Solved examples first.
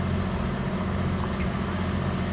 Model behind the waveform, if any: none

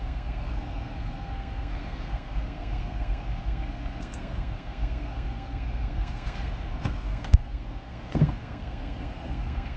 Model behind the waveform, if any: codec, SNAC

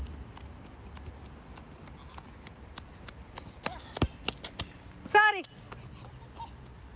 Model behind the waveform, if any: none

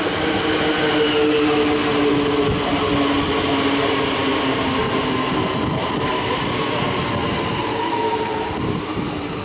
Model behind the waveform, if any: none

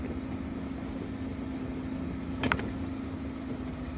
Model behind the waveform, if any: none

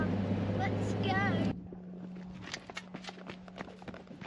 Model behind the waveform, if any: none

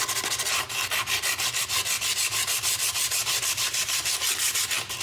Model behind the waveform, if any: none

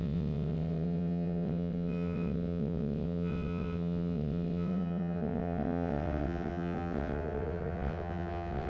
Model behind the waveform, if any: vocoder, WaveNeXt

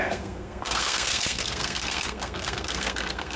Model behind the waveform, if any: codec, SNAC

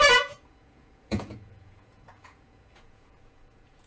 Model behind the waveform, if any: vocoder, Vocos